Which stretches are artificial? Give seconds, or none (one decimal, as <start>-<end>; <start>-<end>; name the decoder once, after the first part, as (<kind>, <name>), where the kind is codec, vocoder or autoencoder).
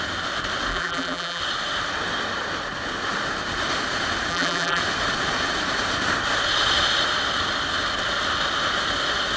0.7-1.4 (vocoder, BigVGAN v2); 4.3-4.8